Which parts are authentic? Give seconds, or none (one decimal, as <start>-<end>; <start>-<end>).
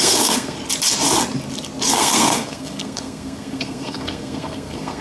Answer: 0.6-1.9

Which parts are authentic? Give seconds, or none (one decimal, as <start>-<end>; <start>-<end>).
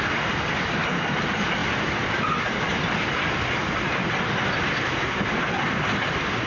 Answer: 0.0-1.6; 5.5-6.5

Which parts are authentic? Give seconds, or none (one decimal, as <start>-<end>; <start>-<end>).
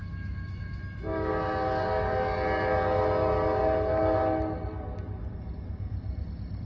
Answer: 1.3-6.7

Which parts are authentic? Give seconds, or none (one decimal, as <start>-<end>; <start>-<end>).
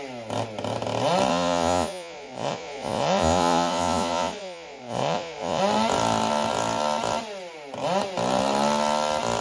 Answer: 0.0-1.3; 5.6-9.4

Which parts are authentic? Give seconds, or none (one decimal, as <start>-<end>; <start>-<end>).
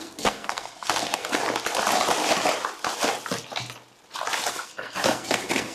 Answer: 1.4-4.5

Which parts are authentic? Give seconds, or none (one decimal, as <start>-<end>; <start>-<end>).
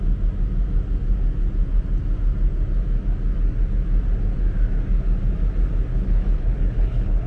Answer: 0.0-5.9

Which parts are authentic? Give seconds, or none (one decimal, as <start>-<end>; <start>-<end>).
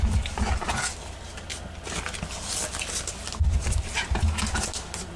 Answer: 0.0-5.2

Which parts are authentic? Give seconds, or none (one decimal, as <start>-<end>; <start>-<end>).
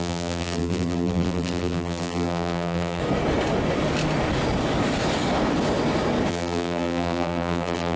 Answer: 3.0-6.3